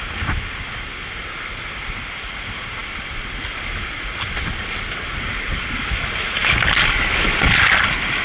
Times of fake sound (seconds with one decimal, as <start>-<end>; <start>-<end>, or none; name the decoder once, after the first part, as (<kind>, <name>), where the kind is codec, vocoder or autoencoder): none